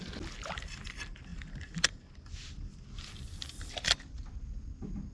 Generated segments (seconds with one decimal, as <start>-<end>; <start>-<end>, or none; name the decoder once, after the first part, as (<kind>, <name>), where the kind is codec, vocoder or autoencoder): none